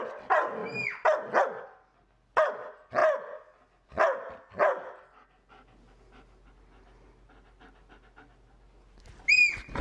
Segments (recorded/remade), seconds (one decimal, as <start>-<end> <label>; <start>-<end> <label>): 0.0-9.8 recorded